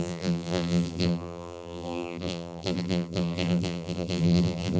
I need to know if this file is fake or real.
fake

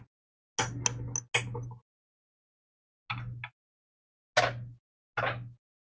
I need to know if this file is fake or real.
real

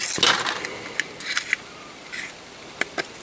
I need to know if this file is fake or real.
real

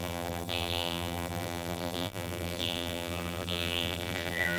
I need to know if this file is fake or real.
fake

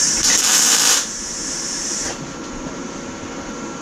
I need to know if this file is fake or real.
fake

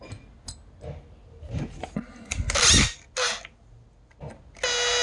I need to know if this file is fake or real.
real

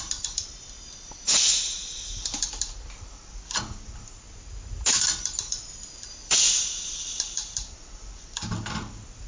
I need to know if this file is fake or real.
fake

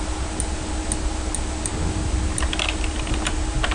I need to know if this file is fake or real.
real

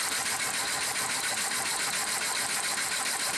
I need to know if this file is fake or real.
fake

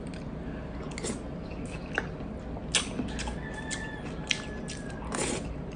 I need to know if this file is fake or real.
real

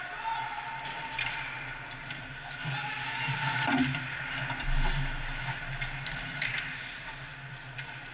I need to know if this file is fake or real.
real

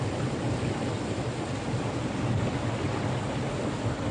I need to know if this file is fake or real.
real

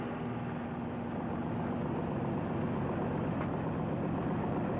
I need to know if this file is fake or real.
real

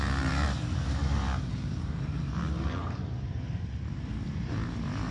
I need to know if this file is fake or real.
fake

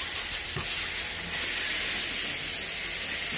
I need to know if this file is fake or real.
real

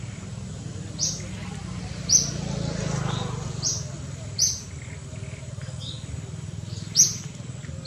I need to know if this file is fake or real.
real